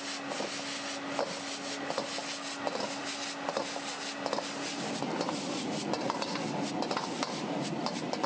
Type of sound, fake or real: real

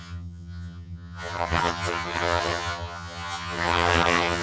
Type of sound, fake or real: fake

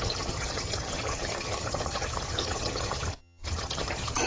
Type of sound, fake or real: fake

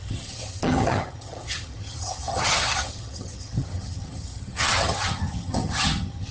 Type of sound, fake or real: fake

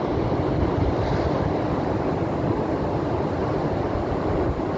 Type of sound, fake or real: real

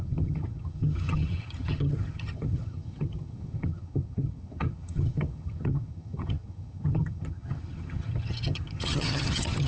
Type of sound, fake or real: fake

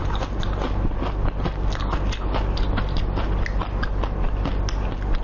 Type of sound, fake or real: real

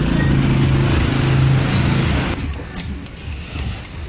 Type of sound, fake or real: real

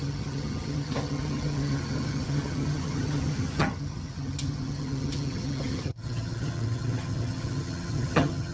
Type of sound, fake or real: fake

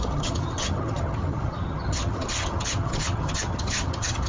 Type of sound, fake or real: fake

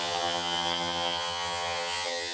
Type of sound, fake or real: fake